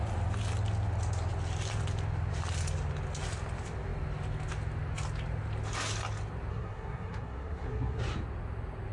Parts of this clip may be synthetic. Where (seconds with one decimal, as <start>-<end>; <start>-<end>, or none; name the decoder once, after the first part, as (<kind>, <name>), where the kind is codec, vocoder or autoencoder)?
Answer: 6.5-8.0 (codec, SNAC)